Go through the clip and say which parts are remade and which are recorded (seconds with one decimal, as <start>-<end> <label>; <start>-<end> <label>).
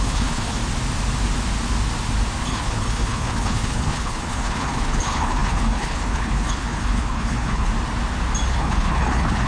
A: 0.0-0.6 remade; 0.6-2.4 recorded; 2.4-7.7 remade; 7.7-8.5 recorded; 8.5-9.5 remade